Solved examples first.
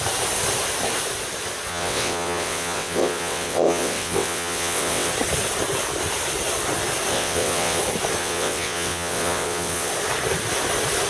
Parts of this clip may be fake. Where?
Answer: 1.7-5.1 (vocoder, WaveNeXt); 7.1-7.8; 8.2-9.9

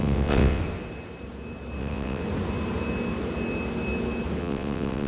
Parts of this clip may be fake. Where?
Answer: 0.0-0.6 (vocoder, WaveNeXt); 1.8-2.2; 4.4-5.1

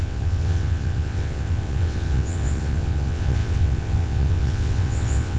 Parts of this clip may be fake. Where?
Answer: 0.0-5.4 (vocoder, WaveNeXt)

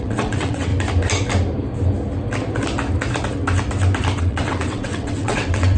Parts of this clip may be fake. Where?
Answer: 0.0-0.7 (vocoder, WaveNeXt); 4.2-5.8

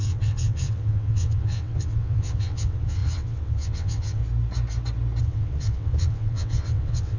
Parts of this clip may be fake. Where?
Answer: 0.0-4.2 (vocoder, WaveNeXt); 5.2-7.2

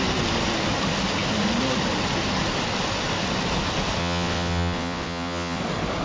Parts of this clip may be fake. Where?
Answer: 4.0-5.6 (vocoder, WaveNeXt)

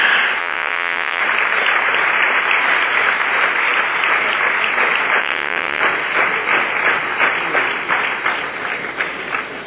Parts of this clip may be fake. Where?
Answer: 0.4-1.2 (vocoder, WaveNeXt); 5.2-5.8

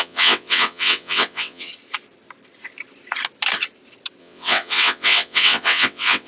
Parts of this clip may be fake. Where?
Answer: 0.0-1.7 (vocoder, WaveNeXt); 4.2-6.3